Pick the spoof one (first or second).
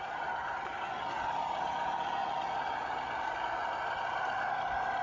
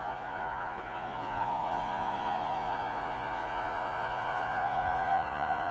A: second